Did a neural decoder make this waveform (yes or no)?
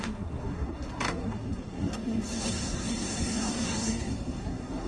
yes